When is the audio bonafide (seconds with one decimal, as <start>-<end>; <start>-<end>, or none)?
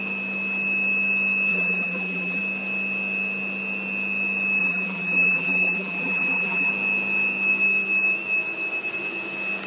0.0-1.5; 2.4-4.6; 6.7-9.7